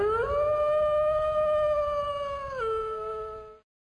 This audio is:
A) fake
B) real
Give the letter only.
B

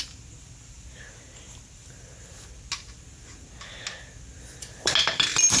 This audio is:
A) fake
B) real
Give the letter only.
B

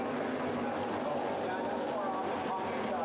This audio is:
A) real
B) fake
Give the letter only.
B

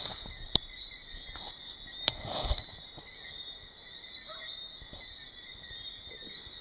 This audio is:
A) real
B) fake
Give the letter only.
A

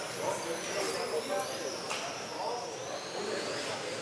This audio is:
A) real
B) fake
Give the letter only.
A